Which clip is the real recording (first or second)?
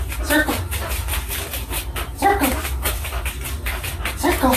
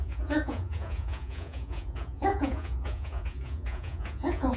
first